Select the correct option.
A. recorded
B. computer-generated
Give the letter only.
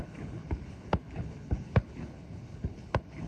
B